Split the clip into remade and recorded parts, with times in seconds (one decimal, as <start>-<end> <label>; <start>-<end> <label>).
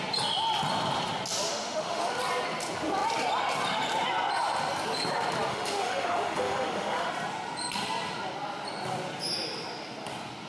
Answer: 0.0-1.5 recorded; 1.5-2.0 remade; 2.0-5.5 recorded; 5.5-7.1 remade; 7.1-10.5 recorded